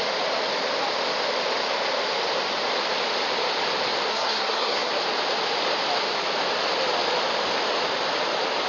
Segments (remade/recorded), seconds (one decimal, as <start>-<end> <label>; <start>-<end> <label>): 0.0-4.1 recorded; 4.1-4.9 remade; 4.9-8.7 recorded